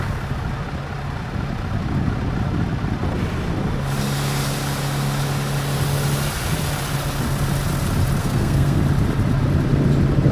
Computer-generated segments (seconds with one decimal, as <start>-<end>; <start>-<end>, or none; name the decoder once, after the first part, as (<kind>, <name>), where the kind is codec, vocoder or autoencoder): 8.2-8.8 (codec, SNAC)

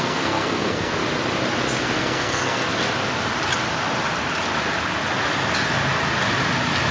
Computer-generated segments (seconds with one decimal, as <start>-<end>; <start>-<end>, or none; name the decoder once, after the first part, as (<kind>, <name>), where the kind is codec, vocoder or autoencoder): 0.0-1.0 (codec, SNAC); 1.8-2.7

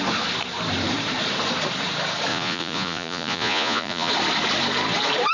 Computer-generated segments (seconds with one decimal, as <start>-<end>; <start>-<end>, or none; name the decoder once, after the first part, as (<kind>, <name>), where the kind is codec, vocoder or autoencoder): 2.3-4.1 (vocoder, Vocos)